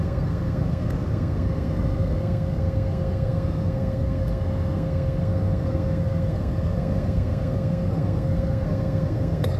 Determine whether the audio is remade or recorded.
remade